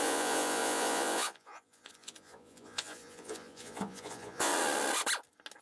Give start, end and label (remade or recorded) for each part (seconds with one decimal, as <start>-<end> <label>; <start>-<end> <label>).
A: 0.0-4.5 remade; 4.5-5.6 recorded